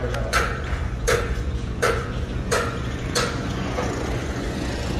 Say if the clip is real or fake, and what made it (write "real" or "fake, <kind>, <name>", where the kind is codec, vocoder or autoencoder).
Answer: fake, vocoder, Vocos